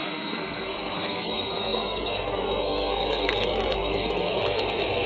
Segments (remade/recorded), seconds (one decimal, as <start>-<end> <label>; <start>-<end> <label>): 0.0-5.1 remade